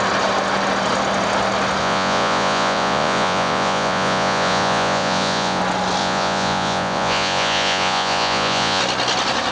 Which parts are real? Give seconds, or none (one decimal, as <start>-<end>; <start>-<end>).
0.0-1.8; 5.6-6.0; 8.8-9.5